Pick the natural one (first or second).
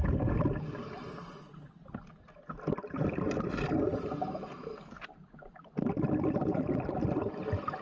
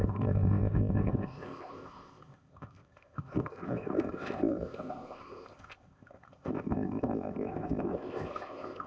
first